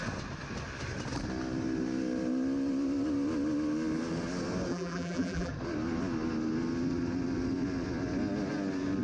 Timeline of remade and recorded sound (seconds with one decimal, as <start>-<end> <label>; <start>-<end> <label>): 0.0-4.7 recorded; 4.7-5.5 remade; 5.5-9.0 recorded